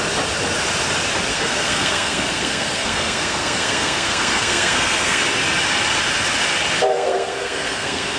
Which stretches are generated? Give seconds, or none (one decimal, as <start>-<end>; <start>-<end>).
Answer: 1.3-5.2; 6.9-8.2